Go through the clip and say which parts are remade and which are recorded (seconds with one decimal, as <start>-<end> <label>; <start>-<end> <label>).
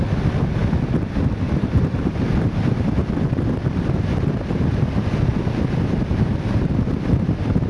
0.0-6.1 recorded; 6.1-6.7 remade; 6.7-7.7 recorded